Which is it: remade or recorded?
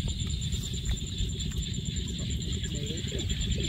recorded